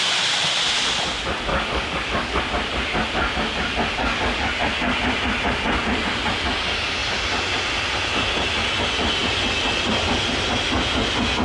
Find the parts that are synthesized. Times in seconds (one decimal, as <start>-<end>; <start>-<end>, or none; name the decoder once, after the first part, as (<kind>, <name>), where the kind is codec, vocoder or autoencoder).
1.5-2.4 (codec, DAC); 4.0-4.5